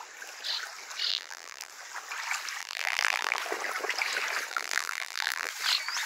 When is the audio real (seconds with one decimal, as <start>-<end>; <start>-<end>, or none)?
0.0-1.1; 1.7-2.6; 3.4-4.5; 5.5-6.1